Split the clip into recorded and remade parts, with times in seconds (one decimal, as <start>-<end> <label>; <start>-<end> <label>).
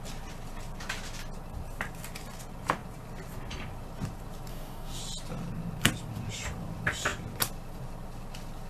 0.0-4.5 recorded; 4.5-5.0 remade; 5.0-8.7 recorded